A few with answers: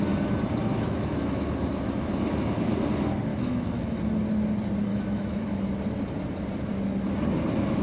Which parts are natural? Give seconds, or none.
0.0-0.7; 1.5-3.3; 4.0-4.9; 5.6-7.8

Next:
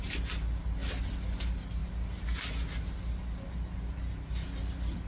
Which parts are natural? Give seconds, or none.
0.0-5.1

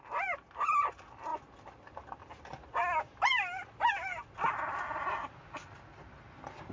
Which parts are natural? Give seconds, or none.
0.0-6.7

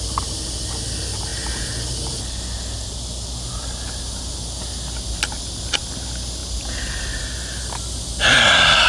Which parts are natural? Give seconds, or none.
0.0-8.9

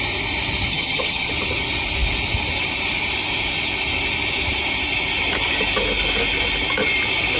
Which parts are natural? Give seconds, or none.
0.0-0.7; 1.3-7.4

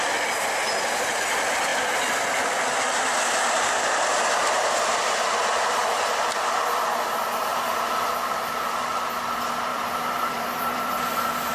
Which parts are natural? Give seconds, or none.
0.0-7.5; 8.7-9.7; 11.0-11.5

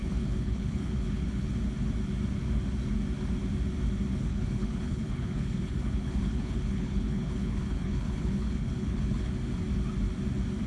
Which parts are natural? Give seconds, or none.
1.5-4.1; 9.3-10.7